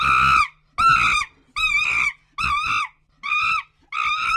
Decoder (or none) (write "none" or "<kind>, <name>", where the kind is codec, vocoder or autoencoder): none